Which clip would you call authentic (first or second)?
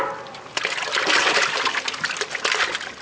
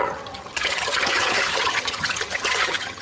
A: first